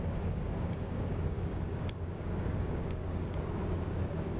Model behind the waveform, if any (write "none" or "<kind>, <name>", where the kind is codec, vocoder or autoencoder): codec, DAC